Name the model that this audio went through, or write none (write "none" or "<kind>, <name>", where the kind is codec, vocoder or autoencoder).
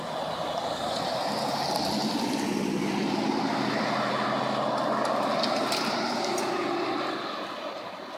none